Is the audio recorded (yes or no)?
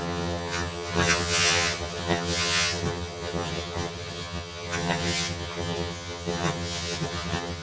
no